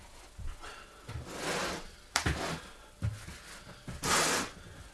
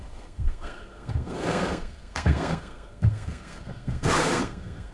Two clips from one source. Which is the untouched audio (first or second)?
first